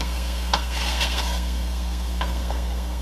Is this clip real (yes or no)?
no